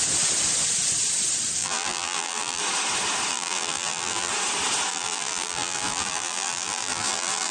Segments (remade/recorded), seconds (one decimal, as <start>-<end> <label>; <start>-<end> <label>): 0.0-1.6 recorded; 1.6-2.6 remade; 2.6-3.3 recorded; 3.3-4.3 remade; 4.3-4.9 recorded; 4.9-7.5 remade